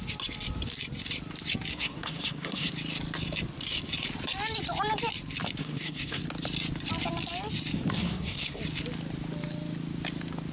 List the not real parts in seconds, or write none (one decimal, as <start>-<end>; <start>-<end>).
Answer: 1.7-2.7; 5.6-6.2; 8.0-8.6